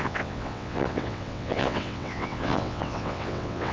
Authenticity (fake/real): fake